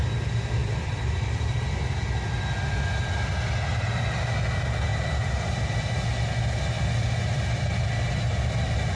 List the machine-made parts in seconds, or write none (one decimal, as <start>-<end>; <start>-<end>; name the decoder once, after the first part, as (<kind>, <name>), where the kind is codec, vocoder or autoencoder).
0.6-1.6 (vocoder, BigVGAN v2); 4.9-5.5